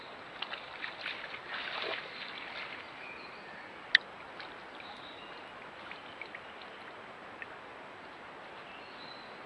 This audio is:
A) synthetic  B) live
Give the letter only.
B